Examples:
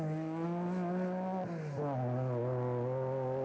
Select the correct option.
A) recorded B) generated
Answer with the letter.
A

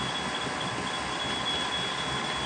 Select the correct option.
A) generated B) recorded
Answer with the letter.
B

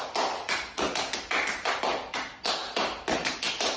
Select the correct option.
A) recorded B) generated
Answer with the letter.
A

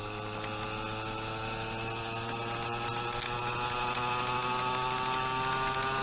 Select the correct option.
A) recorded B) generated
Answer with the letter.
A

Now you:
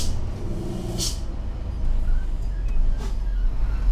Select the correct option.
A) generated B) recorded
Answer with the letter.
B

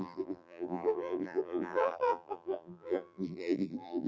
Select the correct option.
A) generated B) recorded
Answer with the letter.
A